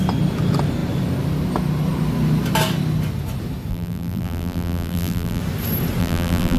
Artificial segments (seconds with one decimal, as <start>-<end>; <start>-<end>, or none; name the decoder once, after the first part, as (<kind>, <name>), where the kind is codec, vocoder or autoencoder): 3.7-5.4 (vocoder, BigVGAN v2); 6.0-6.6